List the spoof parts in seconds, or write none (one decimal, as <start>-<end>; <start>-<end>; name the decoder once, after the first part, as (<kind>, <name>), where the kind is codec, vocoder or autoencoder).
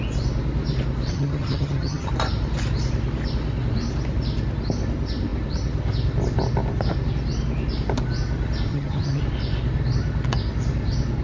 1.1-2.1 (vocoder, HiFi-GAN); 8.7-9.2